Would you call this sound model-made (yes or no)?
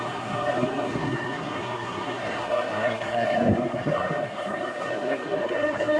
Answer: yes